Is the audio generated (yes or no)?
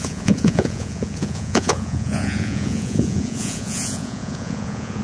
yes